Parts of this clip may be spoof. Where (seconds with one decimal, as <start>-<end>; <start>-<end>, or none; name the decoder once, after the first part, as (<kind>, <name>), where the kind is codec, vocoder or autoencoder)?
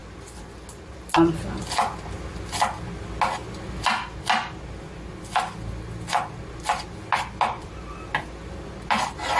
none